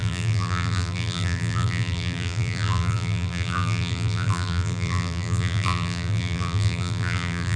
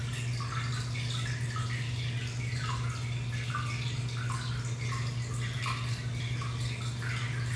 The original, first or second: second